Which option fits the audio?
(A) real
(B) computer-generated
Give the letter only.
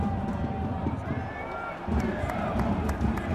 A